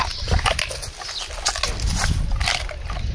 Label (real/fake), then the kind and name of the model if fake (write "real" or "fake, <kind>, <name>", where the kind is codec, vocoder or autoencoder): real